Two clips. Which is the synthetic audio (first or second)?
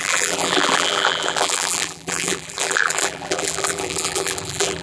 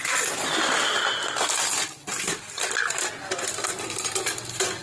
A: first